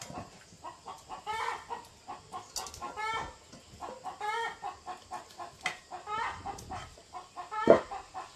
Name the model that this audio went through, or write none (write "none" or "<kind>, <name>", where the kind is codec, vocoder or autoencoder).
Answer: none